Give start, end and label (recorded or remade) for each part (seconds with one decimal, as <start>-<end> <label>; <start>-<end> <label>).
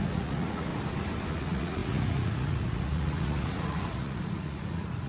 0.0-0.7 remade; 0.7-1.3 recorded; 1.3-5.1 remade